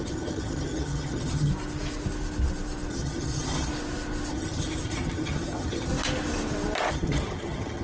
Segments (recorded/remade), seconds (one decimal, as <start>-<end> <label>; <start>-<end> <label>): 0.0-1.5 remade; 1.5-2.9 recorded; 2.9-3.7 remade; 3.7-4.3 recorded; 4.3-5.9 remade; 5.9-6.9 recorded; 6.9-7.8 remade